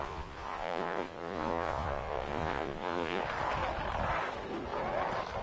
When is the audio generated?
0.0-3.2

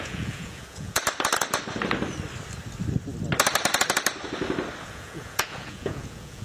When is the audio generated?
0.0-1.0; 4.8-6.4